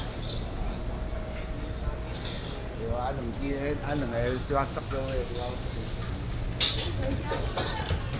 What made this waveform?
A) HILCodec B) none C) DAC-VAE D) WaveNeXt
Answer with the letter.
B